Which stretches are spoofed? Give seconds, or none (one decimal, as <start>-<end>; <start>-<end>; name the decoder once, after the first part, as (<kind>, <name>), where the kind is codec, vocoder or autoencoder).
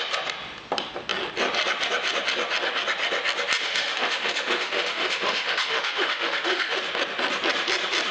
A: 3.6-6.8 (autoencoder, DAC-VAE)